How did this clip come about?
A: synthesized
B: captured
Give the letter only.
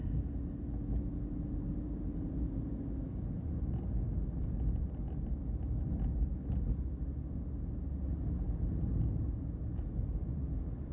B